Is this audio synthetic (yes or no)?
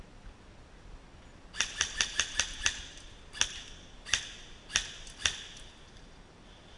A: no